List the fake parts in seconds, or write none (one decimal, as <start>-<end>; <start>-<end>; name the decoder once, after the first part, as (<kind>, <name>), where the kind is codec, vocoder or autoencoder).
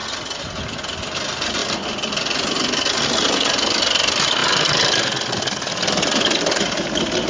none